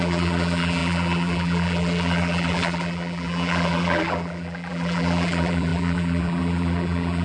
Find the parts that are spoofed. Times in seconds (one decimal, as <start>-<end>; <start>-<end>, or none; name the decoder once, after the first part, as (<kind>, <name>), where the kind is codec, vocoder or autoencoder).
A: 0.0-7.2 (vocoder, BigVGAN v2)